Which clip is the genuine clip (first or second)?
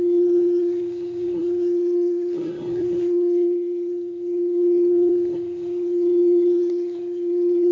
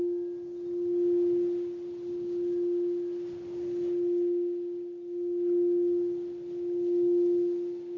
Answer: second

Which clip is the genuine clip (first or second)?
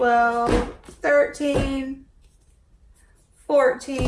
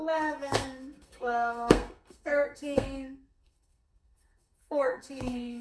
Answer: first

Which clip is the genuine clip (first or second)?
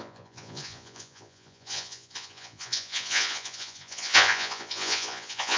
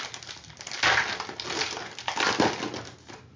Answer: second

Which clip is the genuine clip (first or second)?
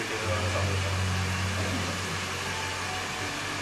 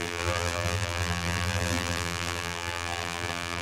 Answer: first